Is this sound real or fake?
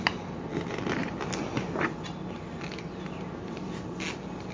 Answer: real